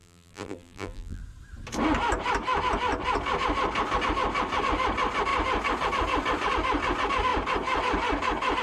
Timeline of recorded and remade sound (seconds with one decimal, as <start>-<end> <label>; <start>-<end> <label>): 0.0-1.2 remade; 1.2-8.6 recorded